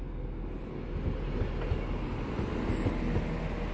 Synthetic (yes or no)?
no